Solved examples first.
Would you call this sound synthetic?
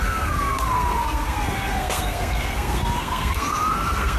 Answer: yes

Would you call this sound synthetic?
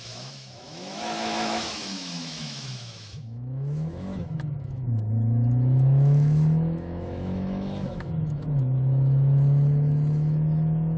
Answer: yes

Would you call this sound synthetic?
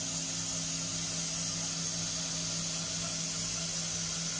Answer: no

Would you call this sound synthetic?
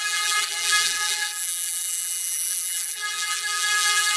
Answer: yes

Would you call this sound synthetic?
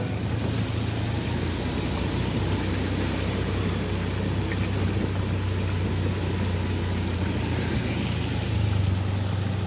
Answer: no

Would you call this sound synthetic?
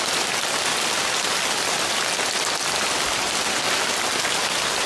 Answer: no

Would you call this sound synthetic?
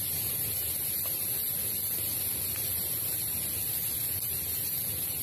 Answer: no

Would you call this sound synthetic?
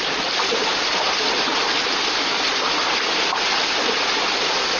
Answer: no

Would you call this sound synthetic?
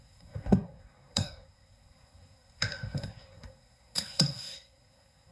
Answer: yes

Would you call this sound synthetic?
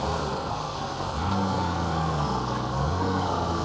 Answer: yes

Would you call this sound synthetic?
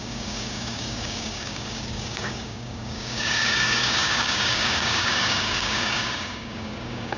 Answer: yes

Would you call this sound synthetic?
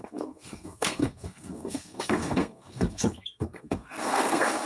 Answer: yes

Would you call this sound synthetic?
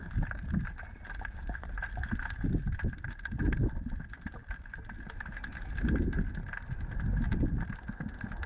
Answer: no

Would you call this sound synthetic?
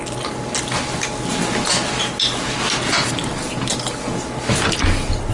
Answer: no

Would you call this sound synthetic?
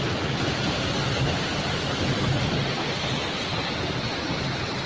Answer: no